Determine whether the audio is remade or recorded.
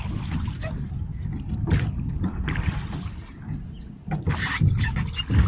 recorded